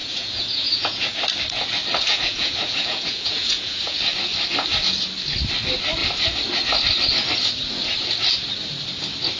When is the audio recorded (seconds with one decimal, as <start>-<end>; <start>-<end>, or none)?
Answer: 1.2-2.1; 4.0-9.4